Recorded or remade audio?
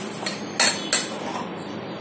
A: recorded